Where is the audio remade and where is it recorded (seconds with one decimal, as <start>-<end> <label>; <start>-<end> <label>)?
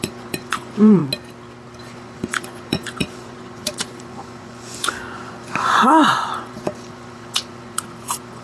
0.0-1.0 remade; 1.0-1.8 recorded; 1.8-8.4 remade